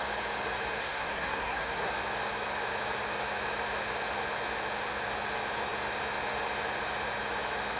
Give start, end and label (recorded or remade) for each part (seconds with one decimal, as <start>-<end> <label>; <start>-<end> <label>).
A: 0.0-0.8 recorded; 0.8-1.9 remade; 1.9-7.8 recorded